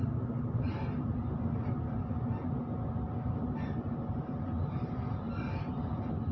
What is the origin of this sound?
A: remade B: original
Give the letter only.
B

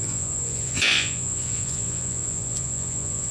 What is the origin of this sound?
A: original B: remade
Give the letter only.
B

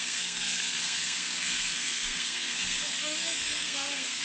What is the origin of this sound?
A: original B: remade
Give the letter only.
B